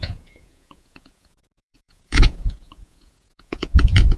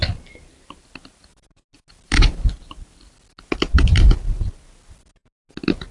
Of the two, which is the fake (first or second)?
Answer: first